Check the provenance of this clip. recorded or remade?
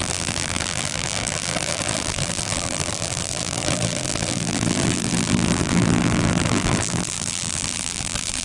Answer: remade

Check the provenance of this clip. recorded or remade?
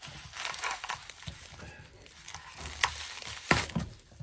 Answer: recorded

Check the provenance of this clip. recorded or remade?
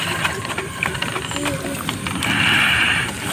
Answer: recorded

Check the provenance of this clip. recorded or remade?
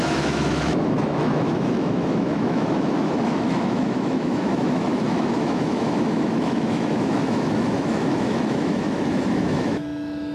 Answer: remade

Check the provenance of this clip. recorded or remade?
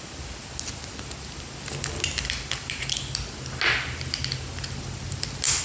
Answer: recorded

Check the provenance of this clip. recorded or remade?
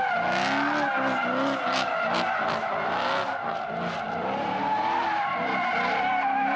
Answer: recorded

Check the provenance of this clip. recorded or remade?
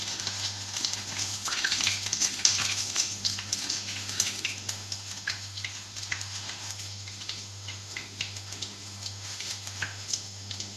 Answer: remade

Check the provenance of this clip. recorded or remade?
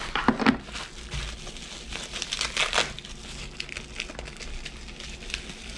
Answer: recorded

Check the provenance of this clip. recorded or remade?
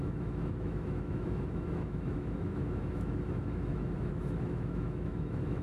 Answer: remade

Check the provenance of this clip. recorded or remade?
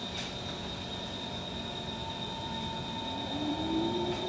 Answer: remade